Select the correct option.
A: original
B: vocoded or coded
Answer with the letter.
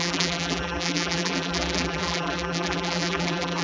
B